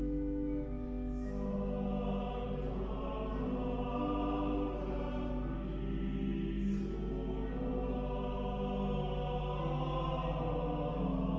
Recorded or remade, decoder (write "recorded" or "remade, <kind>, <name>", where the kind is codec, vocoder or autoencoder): recorded